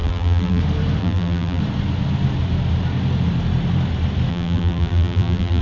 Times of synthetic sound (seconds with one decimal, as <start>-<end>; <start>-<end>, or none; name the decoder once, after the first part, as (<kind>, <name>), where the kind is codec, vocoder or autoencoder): 0.0-0.6 (vocoder, BigVGAN v2); 1.0-1.6; 4.3-5.6

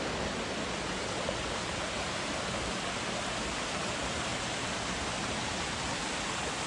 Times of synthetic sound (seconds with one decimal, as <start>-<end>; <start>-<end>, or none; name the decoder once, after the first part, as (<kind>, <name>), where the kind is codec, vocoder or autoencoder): none